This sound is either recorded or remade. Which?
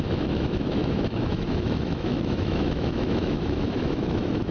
remade